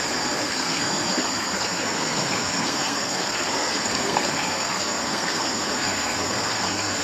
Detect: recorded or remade remade